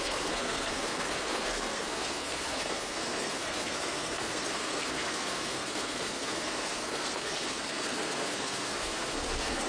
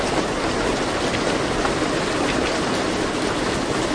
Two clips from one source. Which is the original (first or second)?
second